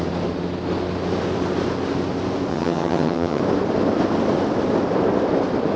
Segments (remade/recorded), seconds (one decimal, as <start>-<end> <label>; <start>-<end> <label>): 0.0-2.5 recorded; 2.5-3.4 remade; 3.4-5.8 recorded